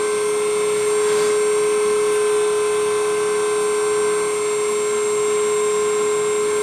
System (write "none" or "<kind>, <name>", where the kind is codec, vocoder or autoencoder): none